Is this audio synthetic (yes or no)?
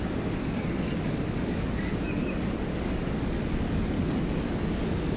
yes